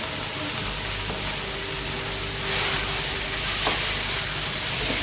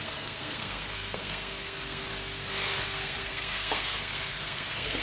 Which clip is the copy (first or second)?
second